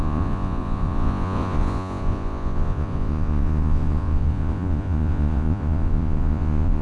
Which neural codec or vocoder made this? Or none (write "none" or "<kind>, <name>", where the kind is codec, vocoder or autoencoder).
vocoder, Vocos